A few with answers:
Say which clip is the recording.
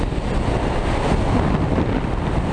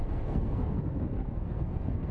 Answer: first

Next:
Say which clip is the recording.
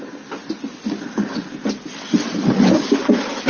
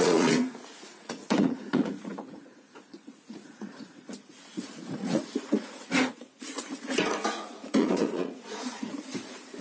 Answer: first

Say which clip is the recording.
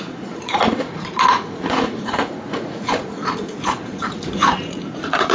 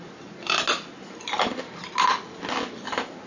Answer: second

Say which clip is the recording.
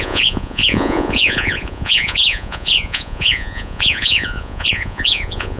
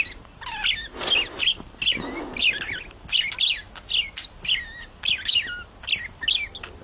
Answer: second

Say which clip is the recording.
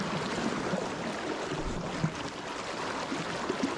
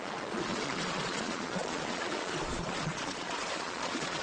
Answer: first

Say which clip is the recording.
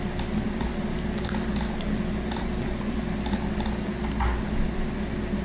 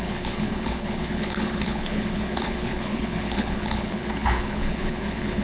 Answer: first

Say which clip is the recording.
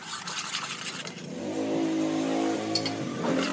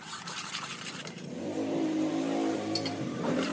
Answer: first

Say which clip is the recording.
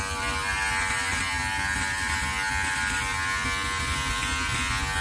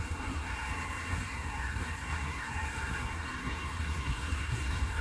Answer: first